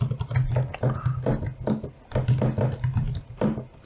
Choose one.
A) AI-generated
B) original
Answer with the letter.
B